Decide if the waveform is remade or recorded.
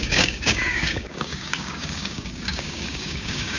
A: remade